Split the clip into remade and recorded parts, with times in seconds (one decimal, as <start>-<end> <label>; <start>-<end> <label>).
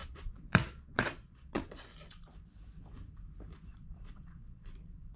0.0-1.9 remade; 1.9-3.7 recorded; 3.7-4.6 remade; 4.6-5.2 recorded